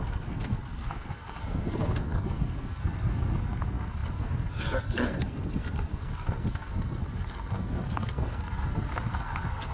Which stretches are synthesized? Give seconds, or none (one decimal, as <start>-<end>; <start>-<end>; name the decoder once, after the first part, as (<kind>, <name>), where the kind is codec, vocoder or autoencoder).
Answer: 0.0-9.7 (codec, SNAC)